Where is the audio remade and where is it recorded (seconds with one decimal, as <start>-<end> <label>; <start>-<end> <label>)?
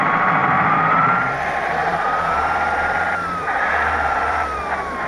0.0-0.4 recorded; 0.4-1.3 remade; 1.3-1.8 recorded; 1.8-4.6 remade; 4.6-5.1 recorded